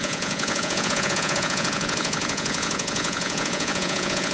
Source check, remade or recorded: remade